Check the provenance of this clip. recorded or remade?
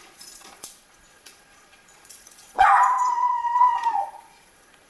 remade